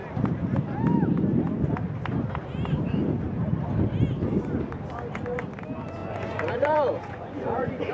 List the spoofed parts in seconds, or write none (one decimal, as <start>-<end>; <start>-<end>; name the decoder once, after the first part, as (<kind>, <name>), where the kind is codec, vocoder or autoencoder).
6.0-7.9 (vocoder, Vocos)